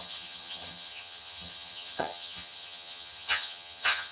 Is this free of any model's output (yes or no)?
no